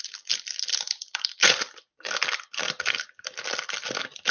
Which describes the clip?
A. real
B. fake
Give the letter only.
A